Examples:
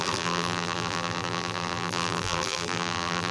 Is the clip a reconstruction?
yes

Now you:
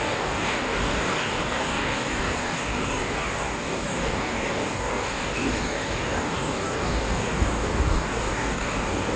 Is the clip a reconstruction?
yes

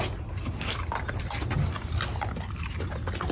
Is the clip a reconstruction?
no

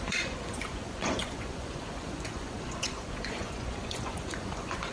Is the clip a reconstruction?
yes